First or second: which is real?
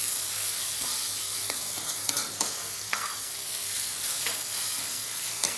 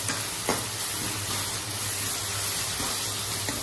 second